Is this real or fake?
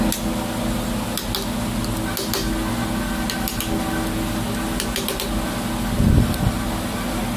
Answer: real